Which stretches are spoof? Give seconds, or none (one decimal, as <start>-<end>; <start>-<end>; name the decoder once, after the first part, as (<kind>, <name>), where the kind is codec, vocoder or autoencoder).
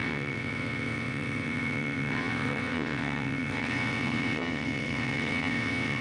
0.0-6.0 (vocoder, WaveNeXt)